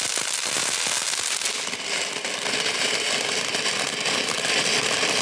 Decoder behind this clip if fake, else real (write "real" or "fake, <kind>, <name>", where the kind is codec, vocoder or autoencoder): fake, vocoder, BigVGAN v2